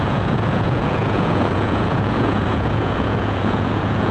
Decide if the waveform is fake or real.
fake